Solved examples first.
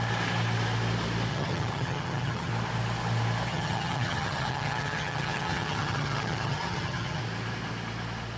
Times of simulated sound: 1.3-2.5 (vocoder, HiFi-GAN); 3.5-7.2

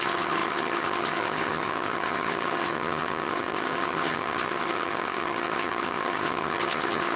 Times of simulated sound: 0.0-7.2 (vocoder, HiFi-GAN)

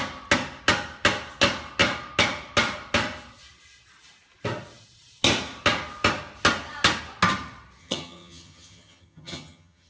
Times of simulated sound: 7.8-9.9 (vocoder, HiFi-GAN)

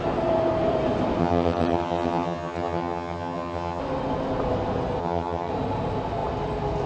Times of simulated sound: 1.2-3.8 (vocoder, HiFi-GAN); 5.0-5.5